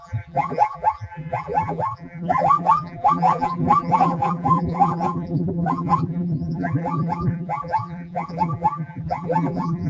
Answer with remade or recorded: remade